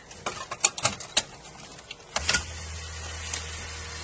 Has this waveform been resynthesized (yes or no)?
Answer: no